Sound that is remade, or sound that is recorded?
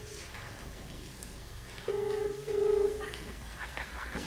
remade